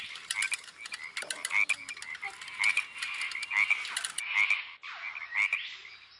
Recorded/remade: recorded